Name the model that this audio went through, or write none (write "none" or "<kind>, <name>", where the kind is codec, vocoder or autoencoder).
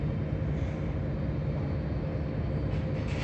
none